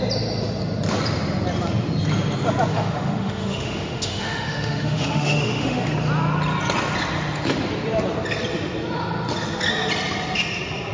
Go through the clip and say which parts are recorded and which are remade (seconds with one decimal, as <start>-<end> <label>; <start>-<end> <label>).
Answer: 0.0-2.7 recorded; 2.7-5.9 remade; 5.9-10.9 recorded